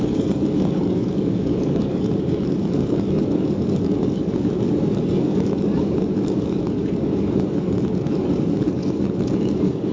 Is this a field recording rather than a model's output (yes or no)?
no